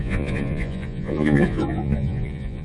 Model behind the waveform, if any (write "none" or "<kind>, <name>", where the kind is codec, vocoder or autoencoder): vocoder, Vocos